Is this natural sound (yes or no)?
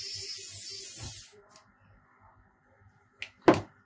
yes